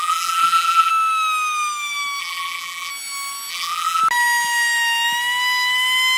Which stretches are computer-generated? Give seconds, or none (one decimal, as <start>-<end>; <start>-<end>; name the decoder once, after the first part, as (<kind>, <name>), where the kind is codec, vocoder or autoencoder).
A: 0.0-0.9 (vocoder, BigVGAN v2); 2.2-2.9; 3.5-4.0